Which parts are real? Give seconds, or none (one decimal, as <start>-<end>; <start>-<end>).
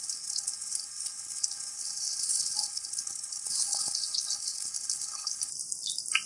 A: 5.5-6.3